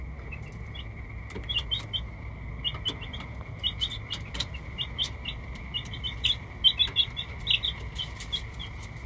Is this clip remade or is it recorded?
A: recorded